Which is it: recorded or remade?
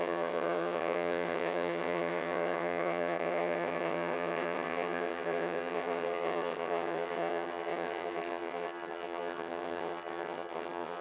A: remade